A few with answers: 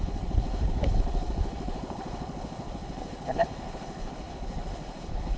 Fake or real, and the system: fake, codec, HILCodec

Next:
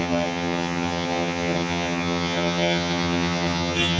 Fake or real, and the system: fake, vocoder, HiFi-GAN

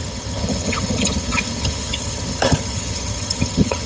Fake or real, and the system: fake, vocoder, HiFi-GAN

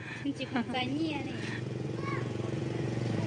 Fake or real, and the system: fake, vocoder, Vocos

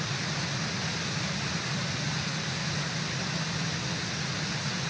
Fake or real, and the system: real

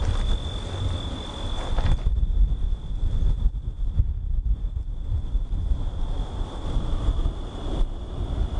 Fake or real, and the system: real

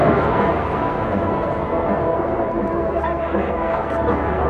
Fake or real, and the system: fake, codec, SNAC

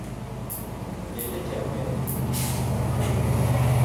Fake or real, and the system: real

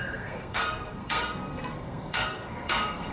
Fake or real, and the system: fake, codec, SNAC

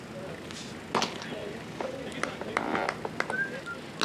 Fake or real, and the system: real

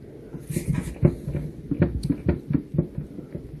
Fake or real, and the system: real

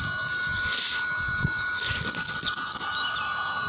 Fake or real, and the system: real